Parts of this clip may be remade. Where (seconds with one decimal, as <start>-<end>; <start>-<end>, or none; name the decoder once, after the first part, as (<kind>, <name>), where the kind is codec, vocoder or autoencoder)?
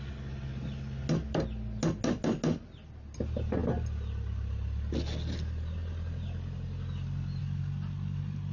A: none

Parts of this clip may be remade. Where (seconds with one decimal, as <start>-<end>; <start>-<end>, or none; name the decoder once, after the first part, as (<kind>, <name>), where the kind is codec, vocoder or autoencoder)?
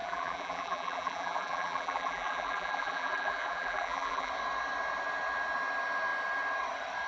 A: 0.0-4.3 (vocoder, BigVGAN v2)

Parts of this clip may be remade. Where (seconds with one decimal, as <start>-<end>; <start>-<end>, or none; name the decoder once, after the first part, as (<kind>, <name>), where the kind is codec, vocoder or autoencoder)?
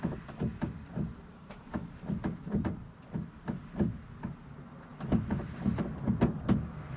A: 1.1-2.8 (vocoder, BigVGAN v2); 4.9-5.8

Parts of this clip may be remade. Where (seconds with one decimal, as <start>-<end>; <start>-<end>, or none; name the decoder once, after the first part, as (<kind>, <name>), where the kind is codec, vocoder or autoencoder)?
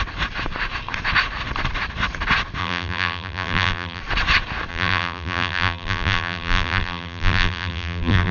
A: 2.6-4.0 (vocoder, BigVGAN v2); 4.7-8.3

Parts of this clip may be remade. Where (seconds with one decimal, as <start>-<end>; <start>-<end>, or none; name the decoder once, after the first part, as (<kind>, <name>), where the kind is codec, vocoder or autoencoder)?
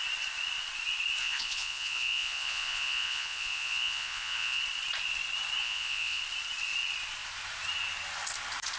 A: 1.2-4.6 (vocoder, Vocos); 5.6-6.2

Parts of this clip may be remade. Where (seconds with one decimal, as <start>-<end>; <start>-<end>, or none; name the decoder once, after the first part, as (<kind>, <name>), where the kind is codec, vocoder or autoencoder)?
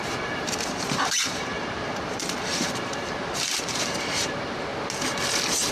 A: 0.0-4.7 (vocoder, BigVGAN v2)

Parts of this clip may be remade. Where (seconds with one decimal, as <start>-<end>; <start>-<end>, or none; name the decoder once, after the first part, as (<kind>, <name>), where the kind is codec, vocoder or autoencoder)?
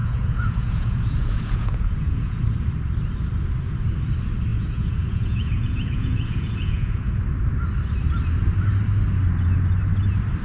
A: 0.0-2.4 (vocoder, Vocos); 4.5-7.2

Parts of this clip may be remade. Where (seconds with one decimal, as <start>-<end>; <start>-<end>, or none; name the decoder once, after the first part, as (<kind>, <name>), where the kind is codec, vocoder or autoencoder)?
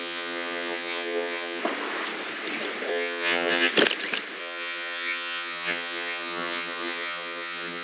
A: 0.0-1.6 (vocoder, HiFi-GAN); 2.9-3.7; 4.4-7.8